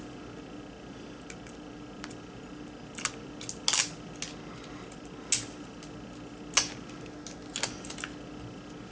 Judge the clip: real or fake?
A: real